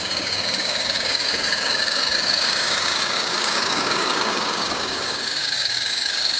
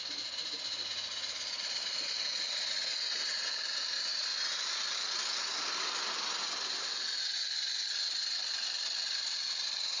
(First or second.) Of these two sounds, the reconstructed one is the first